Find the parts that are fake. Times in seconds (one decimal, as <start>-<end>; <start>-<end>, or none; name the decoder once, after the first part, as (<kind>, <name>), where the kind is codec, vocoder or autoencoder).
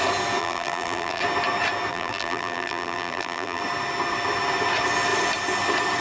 0.4-1.2 (vocoder, BigVGAN v2); 1.9-3.6